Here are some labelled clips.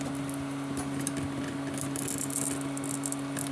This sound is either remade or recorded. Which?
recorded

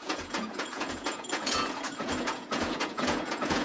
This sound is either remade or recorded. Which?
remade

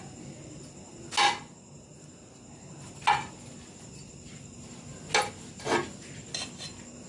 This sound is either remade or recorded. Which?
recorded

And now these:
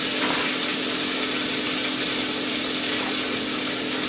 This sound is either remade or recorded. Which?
recorded